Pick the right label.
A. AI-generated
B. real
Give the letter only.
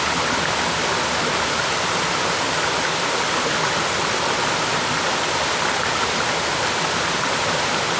B